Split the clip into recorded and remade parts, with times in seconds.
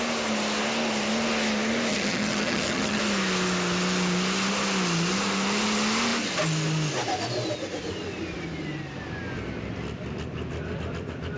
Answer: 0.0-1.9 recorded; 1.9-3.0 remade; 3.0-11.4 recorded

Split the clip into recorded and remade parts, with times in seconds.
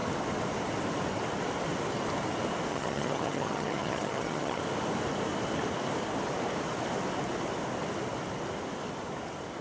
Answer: 0.0-2.7 recorded; 2.7-4.6 remade; 4.6-9.6 recorded